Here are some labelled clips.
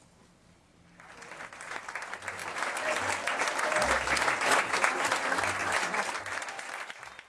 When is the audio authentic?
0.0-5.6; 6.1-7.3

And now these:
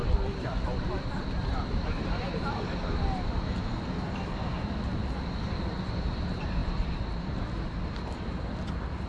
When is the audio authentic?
0.0-9.1

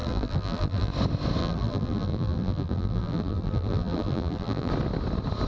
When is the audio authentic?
0.9-1.4; 4.7-5.5

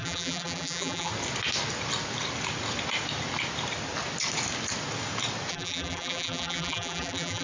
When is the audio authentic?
1.1-5.5